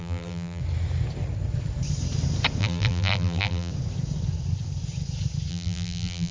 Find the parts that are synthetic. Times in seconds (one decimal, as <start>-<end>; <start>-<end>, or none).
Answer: 0.0-0.6; 2.6-3.7; 5.5-6.3